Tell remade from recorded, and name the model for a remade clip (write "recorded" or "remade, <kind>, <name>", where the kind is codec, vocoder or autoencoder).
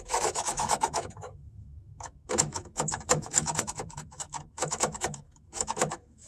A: remade, autoencoder, DAC-VAE